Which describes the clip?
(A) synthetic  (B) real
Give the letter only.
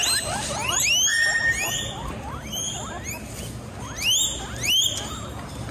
B